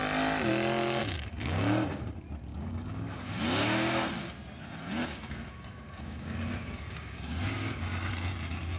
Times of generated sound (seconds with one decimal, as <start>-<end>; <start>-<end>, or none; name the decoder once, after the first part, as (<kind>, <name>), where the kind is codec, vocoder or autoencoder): 1.0-2.0 (codec, DAC); 2.5-3.4; 5.0-8.1